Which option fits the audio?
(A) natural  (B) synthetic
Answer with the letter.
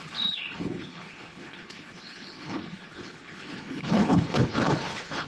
B